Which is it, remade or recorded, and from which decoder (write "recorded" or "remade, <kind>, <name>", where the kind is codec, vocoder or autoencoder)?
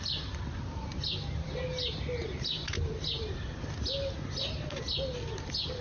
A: recorded